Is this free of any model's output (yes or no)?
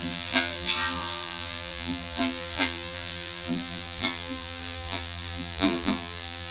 no